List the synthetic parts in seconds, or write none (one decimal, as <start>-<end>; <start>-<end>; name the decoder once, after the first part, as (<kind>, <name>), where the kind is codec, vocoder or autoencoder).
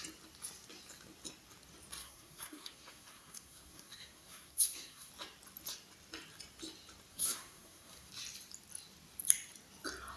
2.0-5.1 (codec, SNAC); 7.1-8.1